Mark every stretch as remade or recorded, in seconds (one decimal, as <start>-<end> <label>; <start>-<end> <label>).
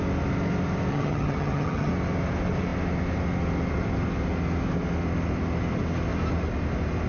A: 0.0-0.9 recorded; 0.9-1.9 remade; 1.9-7.1 recorded